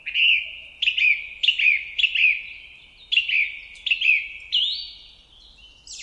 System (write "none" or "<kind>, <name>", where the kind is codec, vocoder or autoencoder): none